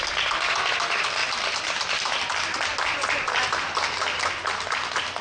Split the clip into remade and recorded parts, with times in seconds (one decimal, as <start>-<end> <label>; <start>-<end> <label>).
0.0-5.2 recorded